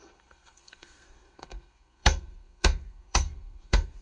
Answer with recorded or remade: remade